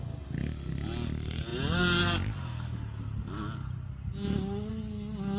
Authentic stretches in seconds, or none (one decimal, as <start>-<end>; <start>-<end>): 0.0-5.4